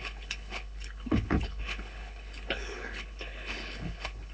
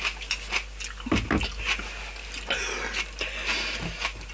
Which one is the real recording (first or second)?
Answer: second